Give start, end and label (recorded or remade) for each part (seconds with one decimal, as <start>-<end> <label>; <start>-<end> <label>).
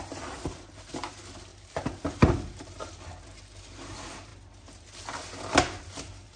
0.0-6.4 recorded